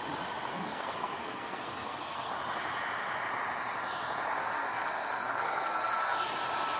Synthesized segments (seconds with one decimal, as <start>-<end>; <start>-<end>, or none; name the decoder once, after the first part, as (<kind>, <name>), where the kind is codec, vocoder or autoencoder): 0.5-2.3 (codec, SNAC); 4.4-6.3